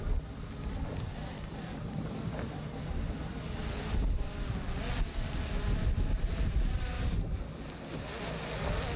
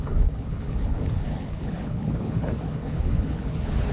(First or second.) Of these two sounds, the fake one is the second